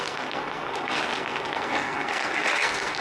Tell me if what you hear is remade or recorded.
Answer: remade